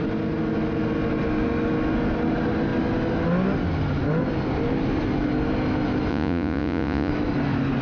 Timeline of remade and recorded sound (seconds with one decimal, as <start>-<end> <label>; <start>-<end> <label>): 0.0-6.1 recorded; 6.1-7.1 remade; 7.1-7.8 recorded